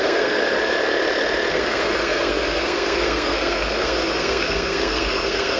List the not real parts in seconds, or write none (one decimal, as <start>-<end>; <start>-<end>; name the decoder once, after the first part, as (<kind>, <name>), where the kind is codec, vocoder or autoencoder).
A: 0.0-0.4 (codec, SNAC); 1.5-5.6